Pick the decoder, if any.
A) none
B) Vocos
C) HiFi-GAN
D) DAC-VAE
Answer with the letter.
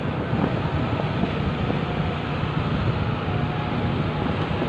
A